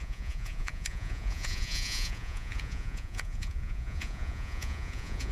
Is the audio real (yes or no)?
no